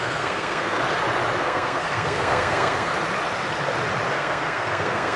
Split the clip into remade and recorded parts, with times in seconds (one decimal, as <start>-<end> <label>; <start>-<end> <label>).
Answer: 0.0-0.8 remade; 0.8-1.4 recorded; 1.4-2.9 remade; 2.9-4.1 recorded; 4.1-5.2 remade